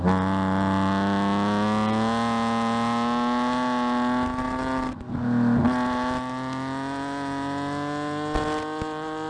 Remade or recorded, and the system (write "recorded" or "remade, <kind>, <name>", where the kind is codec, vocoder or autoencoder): recorded